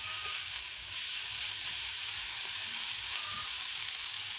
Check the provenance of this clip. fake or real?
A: fake